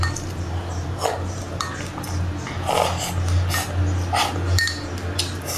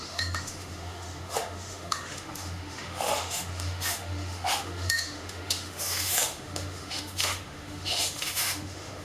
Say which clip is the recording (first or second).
first